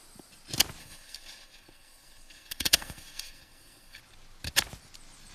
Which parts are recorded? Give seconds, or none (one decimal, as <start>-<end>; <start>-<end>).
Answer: 0.0-0.8; 4.0-5.3